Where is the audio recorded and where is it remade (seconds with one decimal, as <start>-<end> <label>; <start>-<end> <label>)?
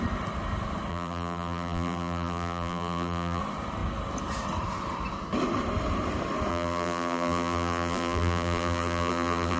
0.0-0.9 recorded; 0.9-3.4 remade; 3.4-6.5 recorded; 6.5-9.6 remade